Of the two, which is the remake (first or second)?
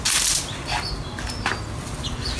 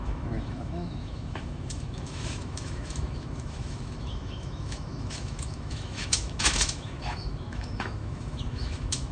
second